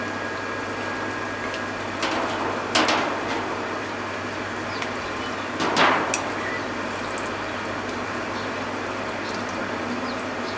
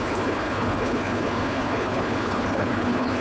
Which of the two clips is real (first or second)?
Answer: first